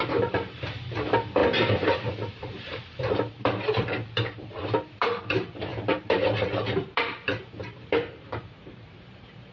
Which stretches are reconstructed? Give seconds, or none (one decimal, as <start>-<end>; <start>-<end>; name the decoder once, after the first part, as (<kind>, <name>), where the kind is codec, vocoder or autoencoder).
0.0-9.5 (vocoder, BigVGAN v2)